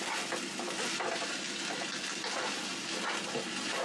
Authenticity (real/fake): real